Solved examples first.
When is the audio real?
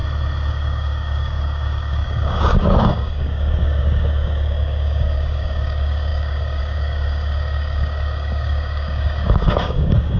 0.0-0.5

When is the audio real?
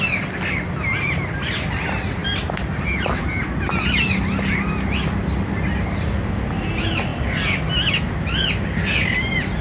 0.0-9.6